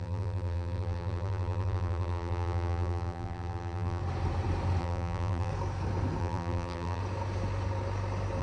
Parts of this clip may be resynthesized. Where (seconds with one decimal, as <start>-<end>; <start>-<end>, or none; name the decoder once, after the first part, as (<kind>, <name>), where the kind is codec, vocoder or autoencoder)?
0.0-4.0 (vocoder, BigVGAN v2); 4.8-5.5; 6.2-7.0